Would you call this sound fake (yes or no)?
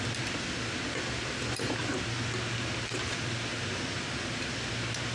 no